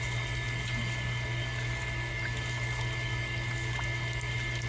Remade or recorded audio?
recorded